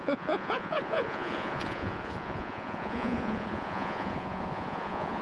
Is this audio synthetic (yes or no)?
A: yes